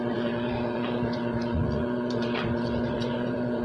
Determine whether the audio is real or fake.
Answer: fake